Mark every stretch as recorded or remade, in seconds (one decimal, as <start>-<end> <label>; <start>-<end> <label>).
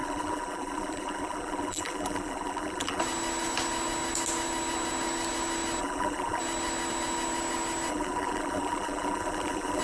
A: 0.0-3.0 remade; 3.0-5.8 recorded; 5.8-6.4 remade; 6.4-7.9 recorded; 7.9-9.8 remade